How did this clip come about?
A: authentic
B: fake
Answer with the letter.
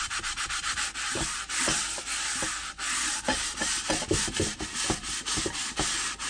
A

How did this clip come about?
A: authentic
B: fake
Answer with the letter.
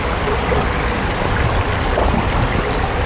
A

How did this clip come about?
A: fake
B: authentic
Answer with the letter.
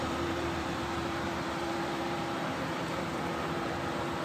A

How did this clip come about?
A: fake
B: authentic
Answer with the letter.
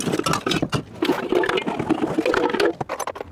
B